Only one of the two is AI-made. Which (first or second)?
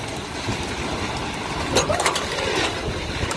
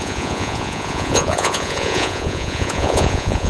second